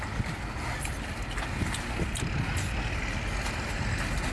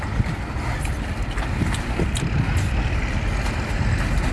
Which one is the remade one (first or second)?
second